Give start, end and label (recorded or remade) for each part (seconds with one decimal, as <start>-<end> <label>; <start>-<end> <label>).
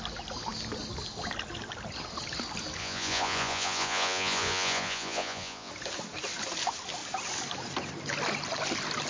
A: 0.0-2.8 recorded; 2.8-5.7 remade; 5.7-9.1 recorded